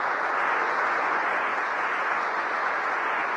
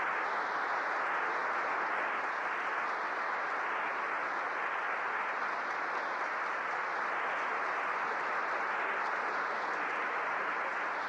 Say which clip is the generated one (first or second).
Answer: first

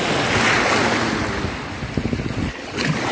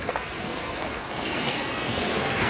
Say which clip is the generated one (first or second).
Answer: second